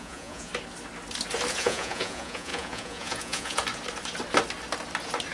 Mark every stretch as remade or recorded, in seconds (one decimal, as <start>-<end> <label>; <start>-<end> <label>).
0.0-0.5 remade; 0.5-1.5 recorded; 1.5-3.6 remade; 3.6-5.3 recorded